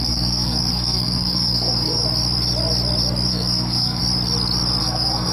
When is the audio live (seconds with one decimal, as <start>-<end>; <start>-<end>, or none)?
2.0-3.3; 4.0-4.8